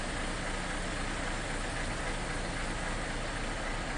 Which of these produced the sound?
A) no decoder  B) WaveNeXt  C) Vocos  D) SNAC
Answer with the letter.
A